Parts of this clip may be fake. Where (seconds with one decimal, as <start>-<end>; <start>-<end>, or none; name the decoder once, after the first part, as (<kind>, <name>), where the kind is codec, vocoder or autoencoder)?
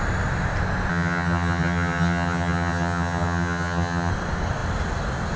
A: 0.9-4.1 (vocoder, HiFi-GAN)